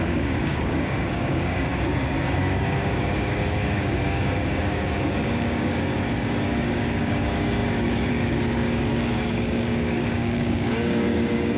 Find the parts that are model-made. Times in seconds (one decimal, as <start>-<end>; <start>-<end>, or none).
0.0-11.6